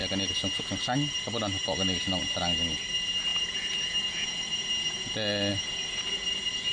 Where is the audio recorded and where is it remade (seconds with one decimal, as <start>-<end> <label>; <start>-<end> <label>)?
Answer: 0.0-6.7 recorded

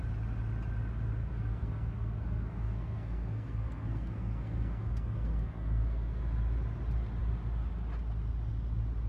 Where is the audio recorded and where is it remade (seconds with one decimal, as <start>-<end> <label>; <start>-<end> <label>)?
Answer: 0.0-1.2 recorded; 1.2-6.2 remade; 6.2-9.1 recorded

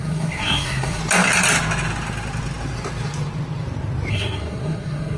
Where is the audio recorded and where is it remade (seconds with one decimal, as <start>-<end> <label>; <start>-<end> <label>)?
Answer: 0.0-1.0 remade; 1.0-4.1 recorded; 4.1-5.2 remade

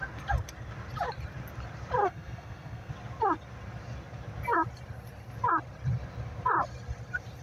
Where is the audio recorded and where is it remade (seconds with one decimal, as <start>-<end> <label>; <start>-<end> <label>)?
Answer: 0.0-2.0 recorded; 2.0-2.9 remade; 2.9-7.4 recorded

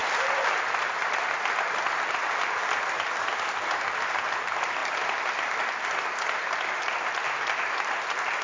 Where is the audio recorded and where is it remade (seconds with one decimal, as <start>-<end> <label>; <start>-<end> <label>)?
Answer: 0.0-8.4 recorded